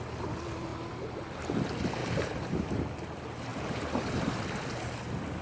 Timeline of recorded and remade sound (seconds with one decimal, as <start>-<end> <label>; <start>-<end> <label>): 0.0-2.0 recorded; 2.0-2.8 remade; 2.8-3.5 recorded; 3.5-4.4 remade; 4.4-5.4 recorded